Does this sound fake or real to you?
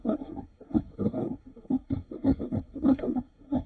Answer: fake